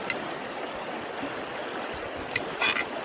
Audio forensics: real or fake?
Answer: real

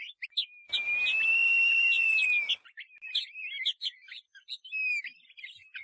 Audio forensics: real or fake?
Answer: real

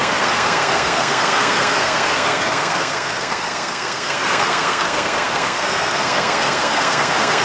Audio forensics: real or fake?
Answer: fake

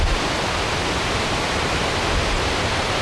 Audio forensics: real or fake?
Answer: real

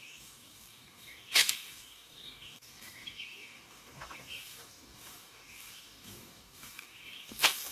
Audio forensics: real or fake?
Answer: fake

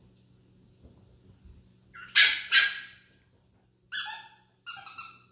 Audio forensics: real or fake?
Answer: real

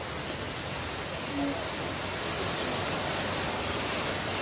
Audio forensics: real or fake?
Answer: real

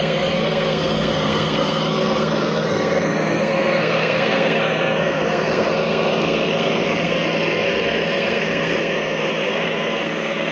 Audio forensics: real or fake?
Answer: fake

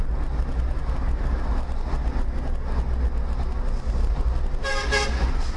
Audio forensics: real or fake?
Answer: real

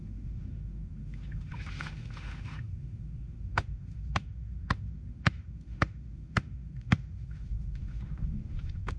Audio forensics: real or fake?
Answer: fake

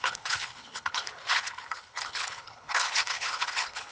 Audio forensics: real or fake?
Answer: fake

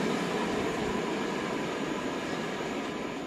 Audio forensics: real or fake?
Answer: real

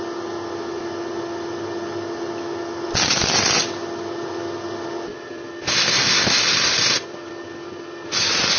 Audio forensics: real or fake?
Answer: real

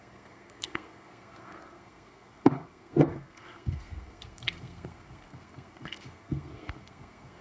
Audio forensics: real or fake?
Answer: fake